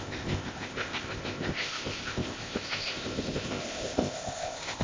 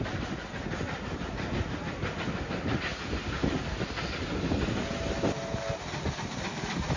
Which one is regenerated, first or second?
first